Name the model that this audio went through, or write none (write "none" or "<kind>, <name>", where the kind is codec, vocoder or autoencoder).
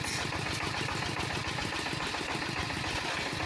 none